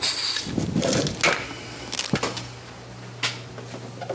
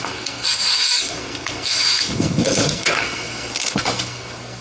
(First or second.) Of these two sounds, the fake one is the second